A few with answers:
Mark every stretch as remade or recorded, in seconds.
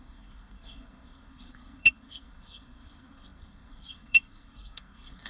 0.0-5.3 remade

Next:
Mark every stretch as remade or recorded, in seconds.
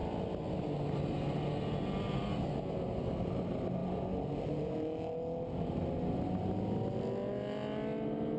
0.0-8.4 recorded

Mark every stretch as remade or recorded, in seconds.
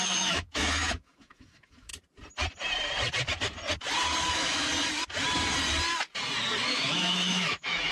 0.0-1.9 remade; 1.9-4.3 recorded; 4.3-4.7 remade; 4.7-6.7 recorded; 6.7-7.9 remade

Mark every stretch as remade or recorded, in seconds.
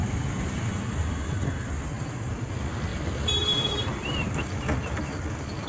0.0-2.5 remade; 2.5-2.9 recorded; 2.9-4.5 remade; 4.5-5.7 recorded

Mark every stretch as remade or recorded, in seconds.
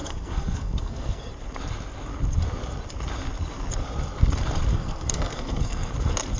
0.0-1.3 remade; 1.3-4.7 recorded; 4.7-5.9 remade; 5.9-6.4 recorded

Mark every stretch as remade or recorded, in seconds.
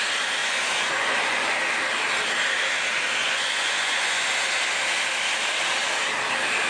0.0-0.4 recorded; 0.4-1.5 remade; 1.5-3.2 recorded; 3.2-4.3 remade; 4.3-6.7 recorded